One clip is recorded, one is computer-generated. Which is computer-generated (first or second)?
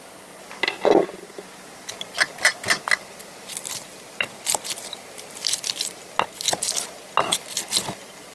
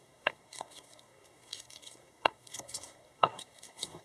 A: second